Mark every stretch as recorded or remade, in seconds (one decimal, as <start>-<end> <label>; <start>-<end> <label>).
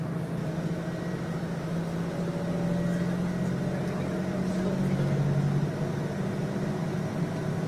0.0-7.7 recorded